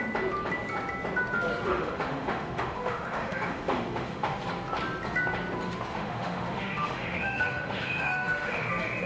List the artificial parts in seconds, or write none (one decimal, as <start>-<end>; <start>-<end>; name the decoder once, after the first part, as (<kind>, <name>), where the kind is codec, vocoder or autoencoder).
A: 1.5-4.4 (autoencoder, DAC-VAE); 5.9-8.7